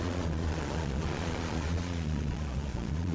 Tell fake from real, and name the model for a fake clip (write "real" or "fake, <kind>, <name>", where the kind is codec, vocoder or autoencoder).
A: fake, vocoder, Vocos